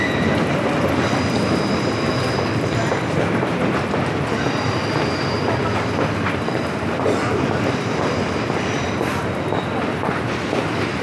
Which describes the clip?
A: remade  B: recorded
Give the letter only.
A